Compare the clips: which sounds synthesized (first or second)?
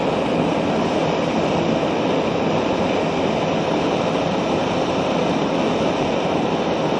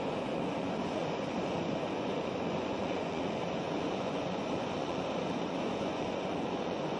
second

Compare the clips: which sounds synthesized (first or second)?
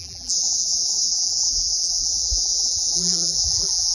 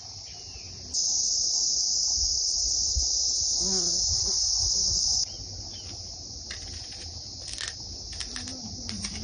first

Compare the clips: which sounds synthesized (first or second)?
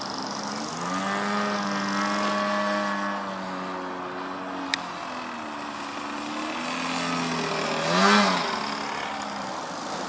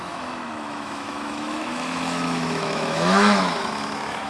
second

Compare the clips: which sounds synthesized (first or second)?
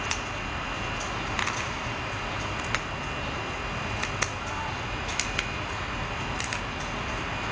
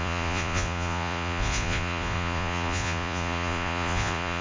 second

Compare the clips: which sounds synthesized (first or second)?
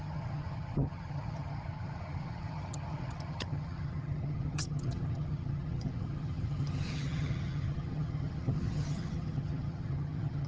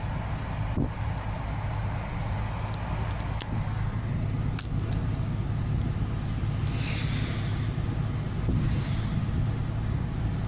first